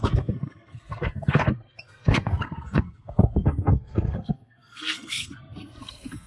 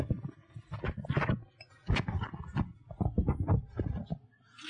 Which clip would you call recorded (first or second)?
second